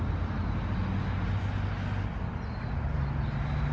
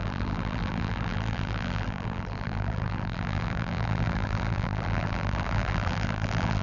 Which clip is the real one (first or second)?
first